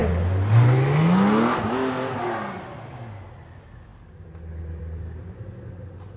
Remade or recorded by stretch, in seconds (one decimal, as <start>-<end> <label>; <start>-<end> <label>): 0.0-6.2 recorded